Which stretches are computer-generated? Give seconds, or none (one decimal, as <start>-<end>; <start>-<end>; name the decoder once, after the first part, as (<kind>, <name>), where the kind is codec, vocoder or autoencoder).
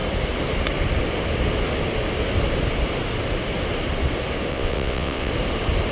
4.5-5.3 (vocoder, WaveNeXt)